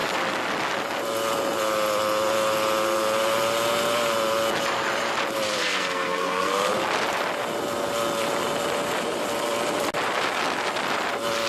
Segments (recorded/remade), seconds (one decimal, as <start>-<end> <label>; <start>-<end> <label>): 0.0-5.6 recorded; 5.6-6.7 remade; 6.7-11.5 recorded